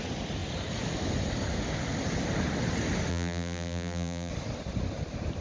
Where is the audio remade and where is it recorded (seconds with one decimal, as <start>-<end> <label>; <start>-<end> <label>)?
0.0-3.1 recorded; 3.1-4.3 remade; 4.3-5.4 recorded